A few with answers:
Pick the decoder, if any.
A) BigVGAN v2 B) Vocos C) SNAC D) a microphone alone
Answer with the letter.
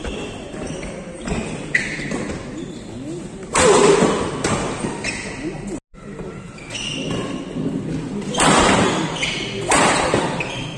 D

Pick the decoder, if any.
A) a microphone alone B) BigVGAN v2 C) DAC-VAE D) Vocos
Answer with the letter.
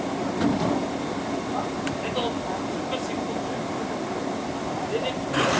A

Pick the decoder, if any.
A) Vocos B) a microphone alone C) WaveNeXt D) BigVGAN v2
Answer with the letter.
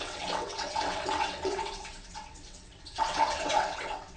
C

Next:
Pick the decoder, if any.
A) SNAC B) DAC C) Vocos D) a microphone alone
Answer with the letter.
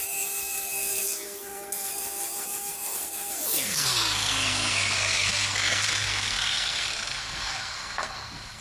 A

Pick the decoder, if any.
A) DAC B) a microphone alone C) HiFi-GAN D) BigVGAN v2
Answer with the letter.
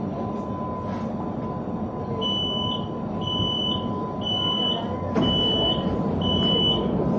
B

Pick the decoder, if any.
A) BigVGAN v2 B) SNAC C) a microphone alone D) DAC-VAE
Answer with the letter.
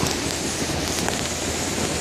C